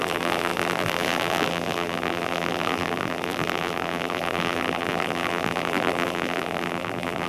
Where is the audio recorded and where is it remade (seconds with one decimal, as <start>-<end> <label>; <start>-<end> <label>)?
0.0-7.3 remade